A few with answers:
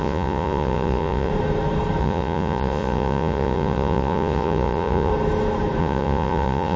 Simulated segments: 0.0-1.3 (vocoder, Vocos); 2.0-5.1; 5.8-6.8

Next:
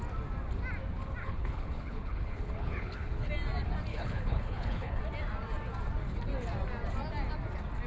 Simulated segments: 1.2-3.3 (codec, HILCodec); 3.9-5.0

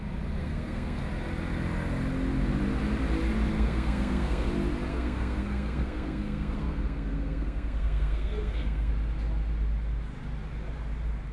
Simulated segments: 0.4-1.0 (codec, SNAC); 3.5-4.5; 4.9-8.9

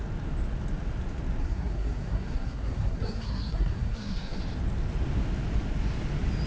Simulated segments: 1.4-4.4 (codec, SNAC)

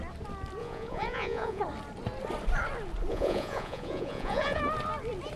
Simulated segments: 0.6-1.6 (vocoder, Vocos); 3.1-4.6

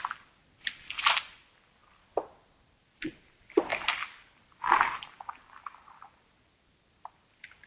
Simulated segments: none

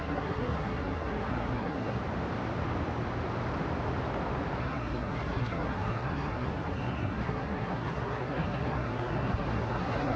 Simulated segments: 0.0-2.0 (codec, SNAC); 4.6-10.2